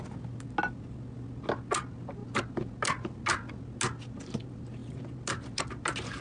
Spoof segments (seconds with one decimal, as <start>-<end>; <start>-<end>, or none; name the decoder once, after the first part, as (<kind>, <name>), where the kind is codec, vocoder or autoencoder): none